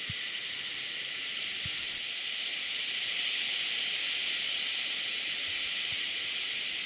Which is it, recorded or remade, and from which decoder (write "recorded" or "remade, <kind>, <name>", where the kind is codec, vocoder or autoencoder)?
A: recorded